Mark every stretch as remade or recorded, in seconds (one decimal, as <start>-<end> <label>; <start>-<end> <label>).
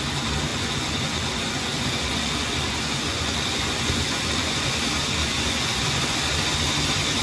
0.0-0.5 recorded; 0.5-4.8 remade; 4.8-5.2 recorded; 5.2-6.2 remade; 6.2-7.2 recorded